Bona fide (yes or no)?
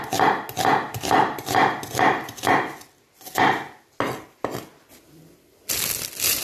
yes